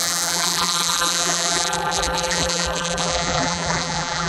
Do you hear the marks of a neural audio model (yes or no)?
yes